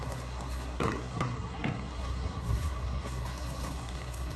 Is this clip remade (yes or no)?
yes